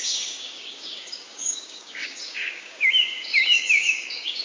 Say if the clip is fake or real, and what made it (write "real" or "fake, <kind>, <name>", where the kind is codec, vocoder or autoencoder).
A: fake, codec, DAC